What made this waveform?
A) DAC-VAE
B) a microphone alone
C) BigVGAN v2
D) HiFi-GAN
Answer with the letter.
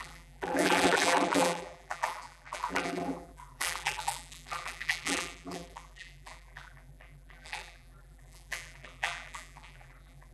C